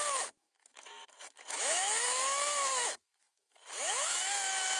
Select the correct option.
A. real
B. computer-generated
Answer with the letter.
B